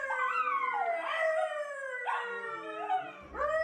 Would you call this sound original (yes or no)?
yes